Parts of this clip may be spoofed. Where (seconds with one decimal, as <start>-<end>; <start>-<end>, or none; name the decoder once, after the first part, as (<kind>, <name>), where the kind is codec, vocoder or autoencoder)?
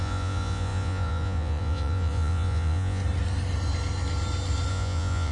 0.0-3.0 (vocoder, Vocos); 4.7-5.3